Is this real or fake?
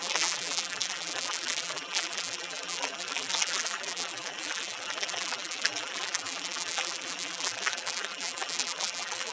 fake